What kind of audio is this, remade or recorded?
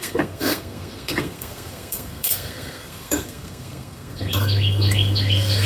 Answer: remade